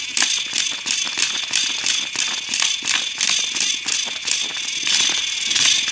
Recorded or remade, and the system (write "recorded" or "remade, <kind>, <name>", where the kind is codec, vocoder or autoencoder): recorded